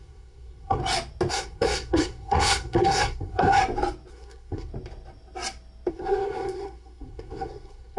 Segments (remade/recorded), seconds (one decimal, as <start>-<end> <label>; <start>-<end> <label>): 0.0-0.8 remade; 0.8-1.3 recorded; 1.3-3.6 remade; 3.6-4.1 recorded; 4.1-4.7 remade; 4.7-5.9 recorded; 5.9-8.0 remade